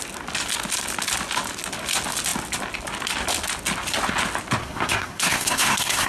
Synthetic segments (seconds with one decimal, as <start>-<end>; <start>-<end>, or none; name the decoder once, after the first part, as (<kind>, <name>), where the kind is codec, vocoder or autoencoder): 4.6-6.1 (codec, SNAC)